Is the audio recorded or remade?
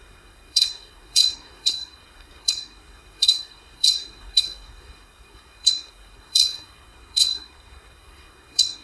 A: remade